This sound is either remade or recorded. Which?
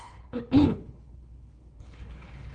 remade